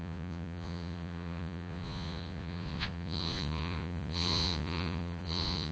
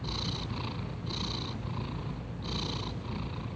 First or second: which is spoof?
first